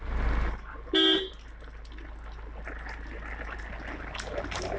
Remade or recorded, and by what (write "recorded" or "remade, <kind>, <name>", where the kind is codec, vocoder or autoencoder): recorded